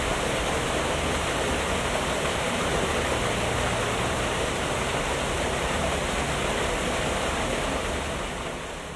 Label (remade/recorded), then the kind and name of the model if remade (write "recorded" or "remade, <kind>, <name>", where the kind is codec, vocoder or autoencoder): recorded